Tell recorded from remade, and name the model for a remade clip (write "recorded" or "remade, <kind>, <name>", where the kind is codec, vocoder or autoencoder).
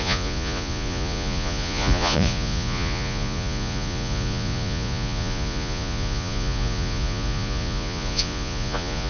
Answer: remade, vocoder, Vocos